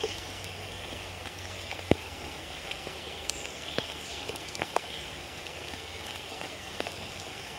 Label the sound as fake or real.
fake